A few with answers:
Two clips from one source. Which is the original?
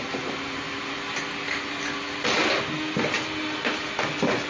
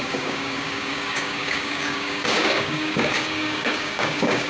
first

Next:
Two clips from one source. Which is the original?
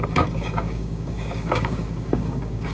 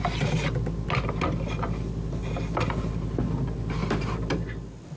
second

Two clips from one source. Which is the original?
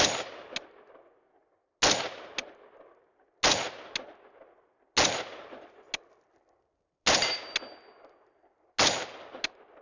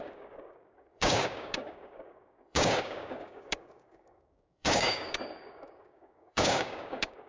first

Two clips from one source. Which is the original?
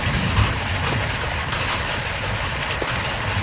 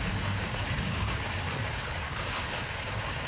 first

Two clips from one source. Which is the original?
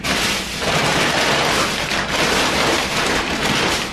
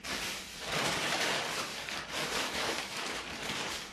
first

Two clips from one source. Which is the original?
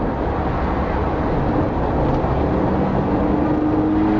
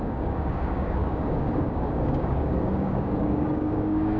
first